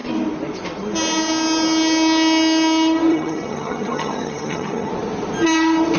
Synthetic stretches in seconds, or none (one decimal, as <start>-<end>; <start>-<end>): 3.1-4.9